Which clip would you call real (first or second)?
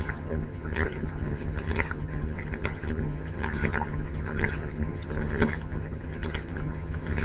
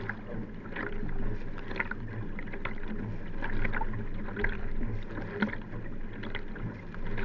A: second